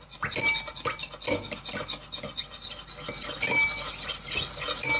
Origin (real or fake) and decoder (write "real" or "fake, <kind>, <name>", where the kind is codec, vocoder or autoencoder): real